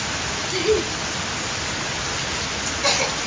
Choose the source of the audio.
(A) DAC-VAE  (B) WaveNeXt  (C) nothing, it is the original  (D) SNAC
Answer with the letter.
C